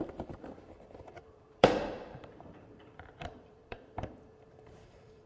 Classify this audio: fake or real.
fake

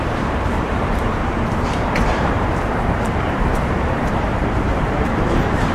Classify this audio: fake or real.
fake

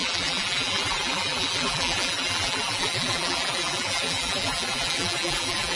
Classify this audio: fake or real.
fake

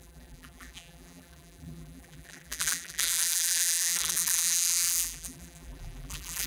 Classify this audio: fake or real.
fake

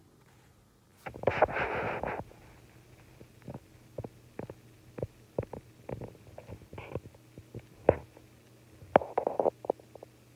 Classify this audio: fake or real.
real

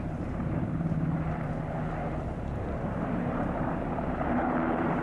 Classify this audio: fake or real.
fake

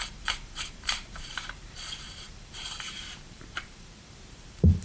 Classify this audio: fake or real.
fake